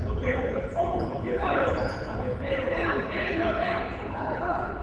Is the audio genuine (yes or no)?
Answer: no